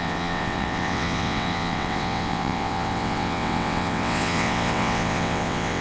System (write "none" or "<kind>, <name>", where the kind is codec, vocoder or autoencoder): vocoder, WaveNeXt